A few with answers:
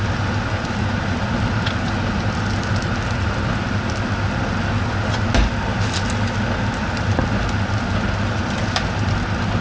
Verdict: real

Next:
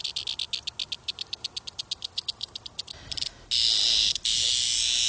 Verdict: real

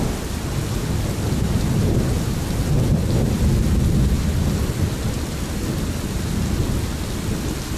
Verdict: real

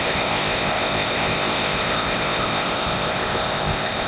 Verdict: fake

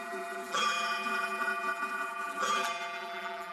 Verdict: fake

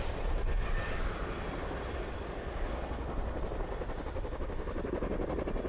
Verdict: real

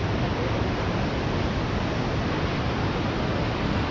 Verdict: real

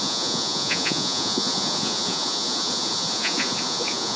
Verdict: fake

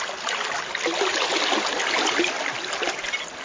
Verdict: real